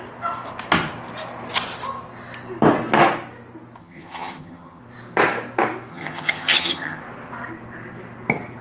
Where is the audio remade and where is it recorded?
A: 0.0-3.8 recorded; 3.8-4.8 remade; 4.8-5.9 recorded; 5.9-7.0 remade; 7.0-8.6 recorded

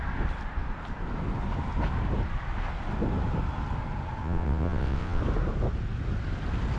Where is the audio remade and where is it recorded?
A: 0.0-4.2 recorded; 4.2-5.2 remade; 5.2-6.8 recorded

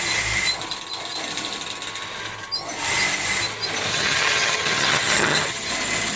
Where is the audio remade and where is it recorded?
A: 0.0-3.9 recorded; 3.9-5.7 remade; 5.7-6.2 recorded

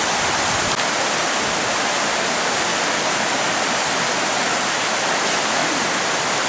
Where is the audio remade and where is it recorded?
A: 0.0-6.5 recorded

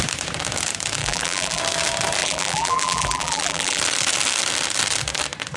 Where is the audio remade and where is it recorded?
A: 0.0-1.0 recorded; 1.0-1.6 remade; 1.6-2.2 recorded; 2.2-3.8 remade; 3.8-5.6 recorded